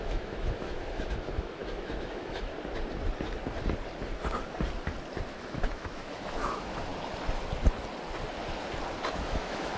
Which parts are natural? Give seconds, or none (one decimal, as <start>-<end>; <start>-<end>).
2.5-5.3; 6.9-9.1